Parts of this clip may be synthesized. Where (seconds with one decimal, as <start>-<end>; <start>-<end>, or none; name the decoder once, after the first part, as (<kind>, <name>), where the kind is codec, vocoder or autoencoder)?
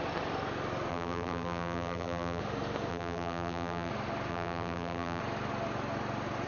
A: 0.9-2.4 (vocoder, BigVGAN v2); 2.9-3.9; 4.3-5.2